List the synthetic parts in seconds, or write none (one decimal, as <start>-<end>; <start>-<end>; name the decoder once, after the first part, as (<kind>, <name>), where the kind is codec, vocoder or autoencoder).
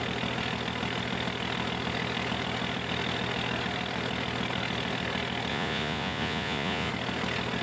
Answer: 5.5-6.9 (vocoder, Vocos)